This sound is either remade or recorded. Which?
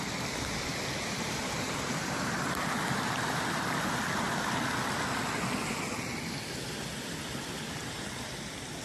recorded